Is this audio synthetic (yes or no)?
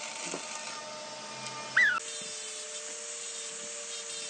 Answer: no